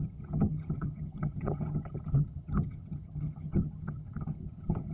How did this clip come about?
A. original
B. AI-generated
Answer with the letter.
B